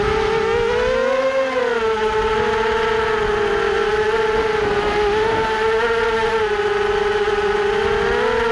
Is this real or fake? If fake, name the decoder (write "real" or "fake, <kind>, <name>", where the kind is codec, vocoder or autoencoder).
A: real